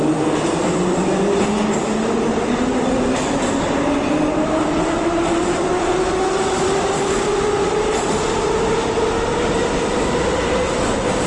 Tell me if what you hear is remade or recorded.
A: recorded